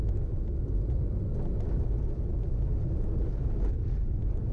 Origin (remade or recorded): recorded